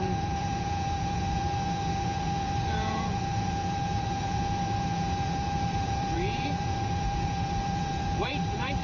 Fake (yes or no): yes